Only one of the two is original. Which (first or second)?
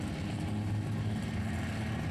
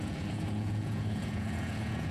first